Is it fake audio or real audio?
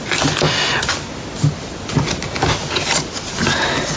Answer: real